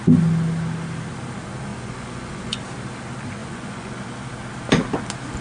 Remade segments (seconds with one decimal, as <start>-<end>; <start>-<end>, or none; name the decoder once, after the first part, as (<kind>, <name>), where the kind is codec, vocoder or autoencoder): 1.7-2.6 (vocoder, Vocos); 3.4-4.0